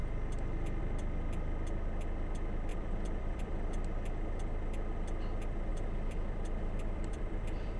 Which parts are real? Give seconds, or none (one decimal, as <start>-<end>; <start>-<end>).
0.0-2.7; 3.8-5.7